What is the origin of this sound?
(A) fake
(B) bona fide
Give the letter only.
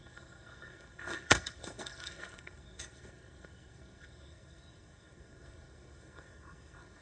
A